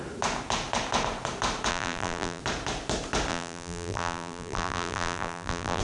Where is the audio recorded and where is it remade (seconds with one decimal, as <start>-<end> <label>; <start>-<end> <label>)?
0.0-1.7 recorded; 1.7-2.4 remade; 2.4-3.3 recorded; 3.3-5.8 remade